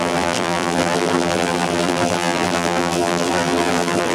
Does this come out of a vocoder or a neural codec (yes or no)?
yes